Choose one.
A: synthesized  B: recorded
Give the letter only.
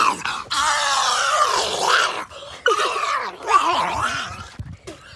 A